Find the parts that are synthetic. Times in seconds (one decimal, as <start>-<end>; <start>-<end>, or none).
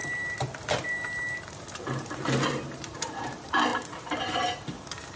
1.4-5.2